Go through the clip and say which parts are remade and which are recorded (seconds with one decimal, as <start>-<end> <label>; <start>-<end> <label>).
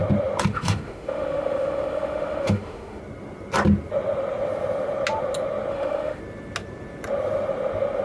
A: 0.0-0.5 recorded; 0.5-3.0 remade; 3.0-5.7 recorded; 5.7-6.2 remade; 6.2-8.0 recorded